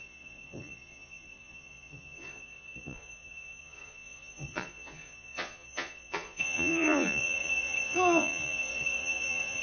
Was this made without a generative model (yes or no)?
no